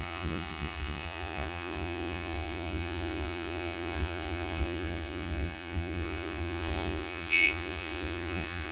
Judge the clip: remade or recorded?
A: remade